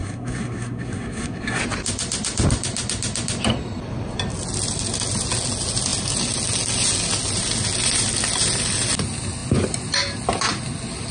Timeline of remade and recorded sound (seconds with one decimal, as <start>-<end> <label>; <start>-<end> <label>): 0.0-1.6 remade; 1.6-11.1 recorded